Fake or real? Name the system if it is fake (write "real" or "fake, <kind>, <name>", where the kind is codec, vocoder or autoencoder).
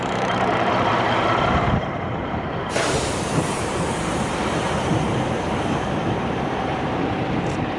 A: fake, vocoder, BigVGAN v2